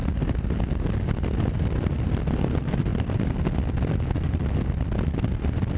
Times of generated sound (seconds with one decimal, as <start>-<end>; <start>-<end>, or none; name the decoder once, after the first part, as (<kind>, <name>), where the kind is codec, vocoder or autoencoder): none